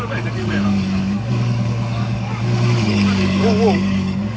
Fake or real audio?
fake